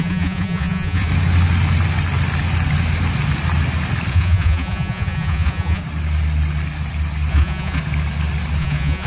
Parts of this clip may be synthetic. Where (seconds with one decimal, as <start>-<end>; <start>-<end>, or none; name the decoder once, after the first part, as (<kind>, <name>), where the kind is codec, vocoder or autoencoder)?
0.0-1.1 (vocoder, Vocos); 4.1-5.8; 7.3-7.8; 8.6-9.1